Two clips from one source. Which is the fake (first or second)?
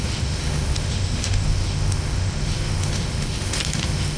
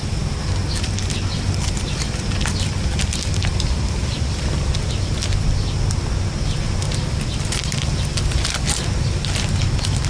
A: first